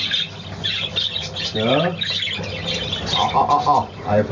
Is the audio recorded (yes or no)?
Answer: yes